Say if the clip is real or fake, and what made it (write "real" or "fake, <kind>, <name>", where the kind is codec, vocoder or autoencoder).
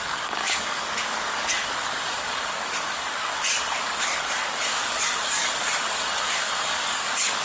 fake, codec, DAC